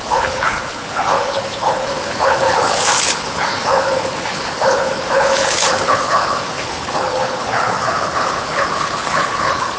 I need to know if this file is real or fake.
fake